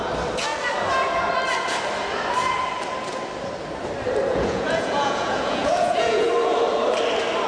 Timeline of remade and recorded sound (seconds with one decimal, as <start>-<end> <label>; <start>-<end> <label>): 0.0-4.3 recorded; 4.3-6.3 remade; 6.3-7.5 recorded